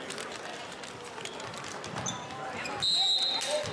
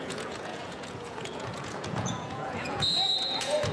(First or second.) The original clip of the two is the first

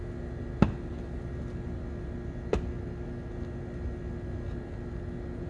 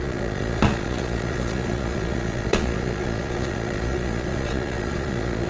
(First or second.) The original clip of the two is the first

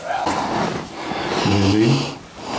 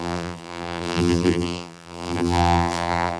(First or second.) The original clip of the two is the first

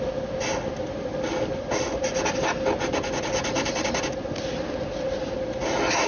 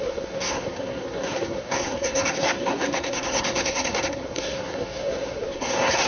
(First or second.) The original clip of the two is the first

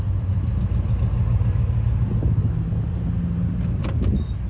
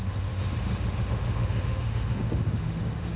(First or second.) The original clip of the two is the first